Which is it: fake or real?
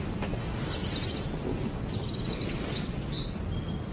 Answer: real